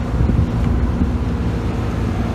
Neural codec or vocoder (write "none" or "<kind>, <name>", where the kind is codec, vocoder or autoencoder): none